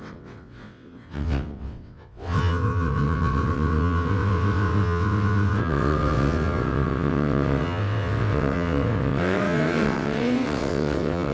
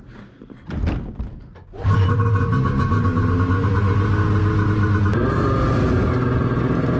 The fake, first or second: first